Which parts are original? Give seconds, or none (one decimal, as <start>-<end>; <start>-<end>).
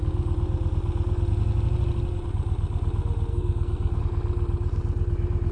0.0-3.3; 4.0-5.5